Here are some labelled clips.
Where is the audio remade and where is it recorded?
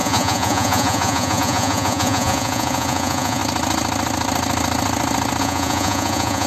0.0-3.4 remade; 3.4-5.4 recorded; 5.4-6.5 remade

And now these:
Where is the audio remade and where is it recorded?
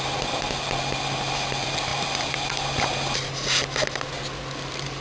0.0-5.0 recorded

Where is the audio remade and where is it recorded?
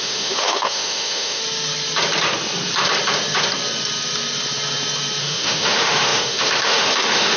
0.0-1.4 remade; 1.4-5.2 recorded; 5.2-7.4 remade